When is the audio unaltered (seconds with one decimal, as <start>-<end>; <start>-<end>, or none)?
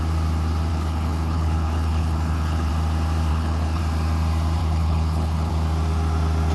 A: 0.0-0.7; 2.7-3.3; 3.8-4.6; 5.5-6.5